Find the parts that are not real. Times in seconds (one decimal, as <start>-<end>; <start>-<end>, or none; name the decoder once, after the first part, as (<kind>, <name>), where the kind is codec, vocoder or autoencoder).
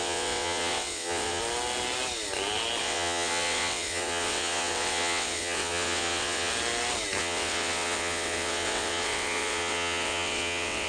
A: 0.0-1.4 (vocoder, WaveNeXt); 2.8-6.5; 7.2-10.9